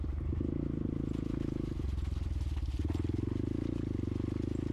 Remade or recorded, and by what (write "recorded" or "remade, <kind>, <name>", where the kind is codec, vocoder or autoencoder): recorded